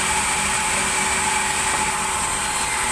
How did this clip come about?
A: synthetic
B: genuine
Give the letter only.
B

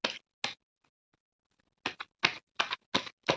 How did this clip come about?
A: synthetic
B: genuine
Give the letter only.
B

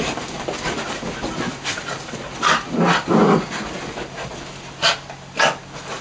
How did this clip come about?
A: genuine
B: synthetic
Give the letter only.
A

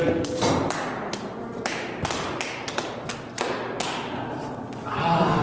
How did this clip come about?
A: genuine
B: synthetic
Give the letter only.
A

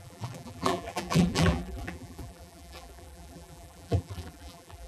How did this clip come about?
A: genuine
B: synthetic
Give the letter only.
B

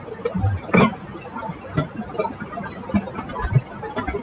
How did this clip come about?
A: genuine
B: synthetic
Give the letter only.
A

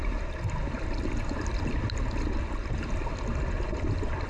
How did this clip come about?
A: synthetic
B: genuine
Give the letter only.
B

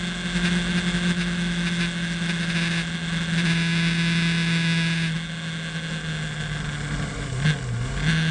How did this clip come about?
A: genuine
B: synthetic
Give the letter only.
A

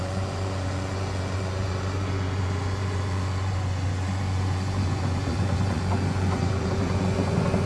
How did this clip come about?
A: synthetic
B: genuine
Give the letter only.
A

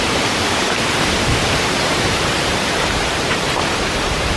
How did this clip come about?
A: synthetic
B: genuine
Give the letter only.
A